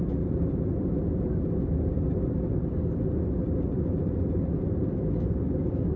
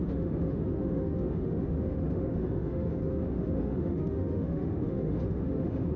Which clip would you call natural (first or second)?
first